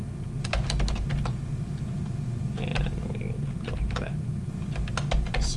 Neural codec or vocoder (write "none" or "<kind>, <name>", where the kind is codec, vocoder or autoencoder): none